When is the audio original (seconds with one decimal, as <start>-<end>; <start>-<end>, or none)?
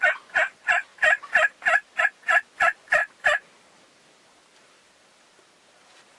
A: 0.9-2.0; 3.0-6.2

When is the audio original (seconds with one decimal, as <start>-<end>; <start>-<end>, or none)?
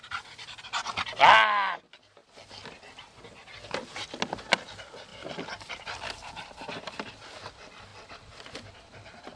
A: 0.0-5.1; 7.1-7.9; 8.7-9.4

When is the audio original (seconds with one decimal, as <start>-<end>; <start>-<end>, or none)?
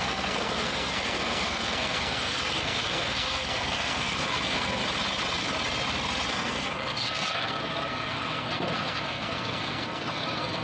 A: 4.8-6.3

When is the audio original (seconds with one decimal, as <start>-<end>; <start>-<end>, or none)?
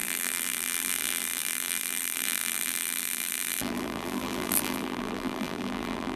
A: none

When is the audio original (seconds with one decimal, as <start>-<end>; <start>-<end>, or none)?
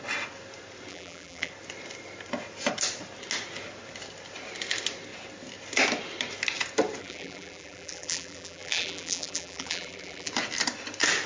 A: 0.0-0.9; 1.5-7.0; 10.3-11.3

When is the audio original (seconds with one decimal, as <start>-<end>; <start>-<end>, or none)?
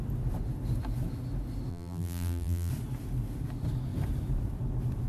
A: 0.0-1.7; 2.7-5.1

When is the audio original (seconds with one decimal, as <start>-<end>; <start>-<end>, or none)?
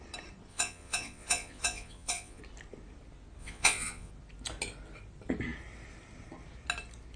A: 0.0-0.5; 2.4-3.4; 4.1-7.2